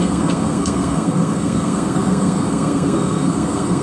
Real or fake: fake